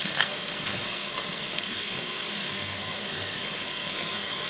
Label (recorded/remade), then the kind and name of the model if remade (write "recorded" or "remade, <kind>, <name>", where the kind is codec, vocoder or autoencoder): remade, codec, SNAC